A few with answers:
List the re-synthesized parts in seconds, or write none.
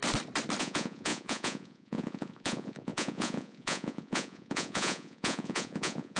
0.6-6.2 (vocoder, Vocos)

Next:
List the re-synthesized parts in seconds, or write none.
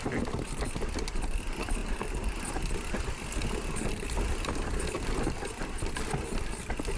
none